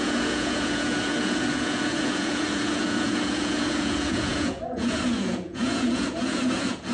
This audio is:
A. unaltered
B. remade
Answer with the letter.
B